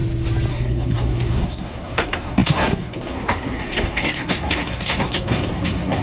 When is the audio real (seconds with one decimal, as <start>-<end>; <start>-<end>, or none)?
0.0-0.5